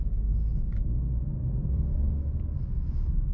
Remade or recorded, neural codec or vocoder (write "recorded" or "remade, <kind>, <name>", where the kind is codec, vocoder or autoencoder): remade, codec, DAC